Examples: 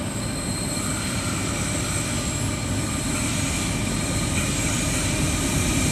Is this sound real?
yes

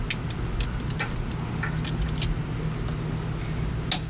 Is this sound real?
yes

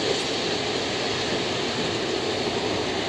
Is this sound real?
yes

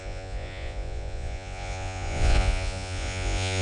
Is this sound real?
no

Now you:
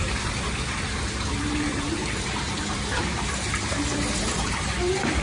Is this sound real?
no